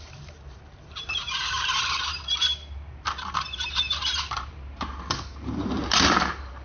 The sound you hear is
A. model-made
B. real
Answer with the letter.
A